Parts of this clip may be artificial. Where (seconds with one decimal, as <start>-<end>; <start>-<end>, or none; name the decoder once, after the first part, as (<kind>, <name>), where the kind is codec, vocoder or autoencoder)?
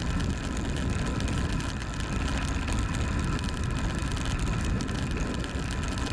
none